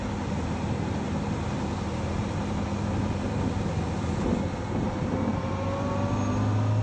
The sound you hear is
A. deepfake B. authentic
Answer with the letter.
B